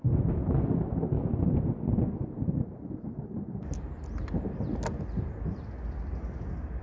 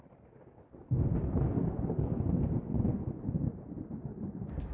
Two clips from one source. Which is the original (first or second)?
first